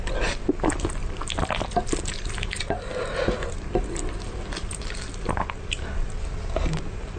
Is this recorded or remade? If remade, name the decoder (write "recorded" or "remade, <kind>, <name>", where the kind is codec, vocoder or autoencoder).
recorded